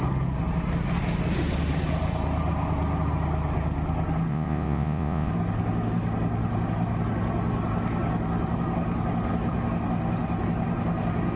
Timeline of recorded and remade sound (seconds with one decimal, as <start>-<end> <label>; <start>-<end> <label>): 0.0-4.3 recorded; 4.3-5.3 remade; 5.3-11.4 recorded